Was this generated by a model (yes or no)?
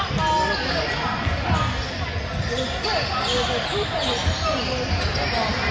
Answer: no